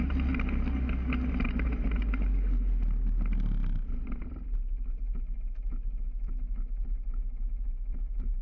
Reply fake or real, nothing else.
real